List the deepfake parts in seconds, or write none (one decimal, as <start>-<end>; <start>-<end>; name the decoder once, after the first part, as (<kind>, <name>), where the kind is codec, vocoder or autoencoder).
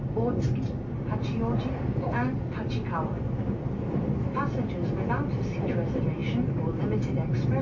none